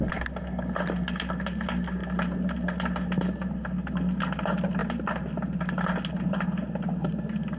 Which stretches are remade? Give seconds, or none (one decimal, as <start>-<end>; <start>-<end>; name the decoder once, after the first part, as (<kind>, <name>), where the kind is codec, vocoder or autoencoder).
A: none